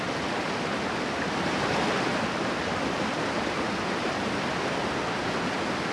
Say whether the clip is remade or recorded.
recorded